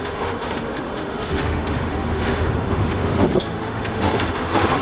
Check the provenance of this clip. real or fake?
fake